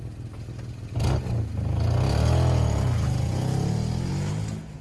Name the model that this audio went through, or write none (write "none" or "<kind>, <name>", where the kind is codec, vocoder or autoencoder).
none